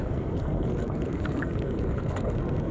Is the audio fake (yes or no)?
yes